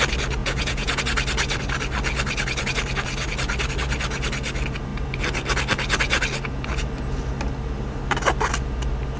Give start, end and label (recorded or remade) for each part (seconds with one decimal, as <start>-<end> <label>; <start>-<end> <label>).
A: 0.0-0.4 recorded; 0.4-1.0 remade; 1.0-9.2 recorded